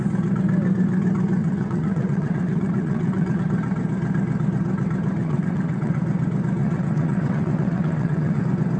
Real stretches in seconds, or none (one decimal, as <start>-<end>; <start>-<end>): 0.0-1.4; 3.4-5.2; 6.0-6.6; 8.4-8.8